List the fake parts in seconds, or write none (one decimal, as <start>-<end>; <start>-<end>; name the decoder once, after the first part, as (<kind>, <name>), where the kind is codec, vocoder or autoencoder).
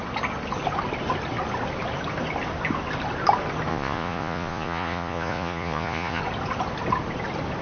3.7-6.2 (vocoder, Vocos)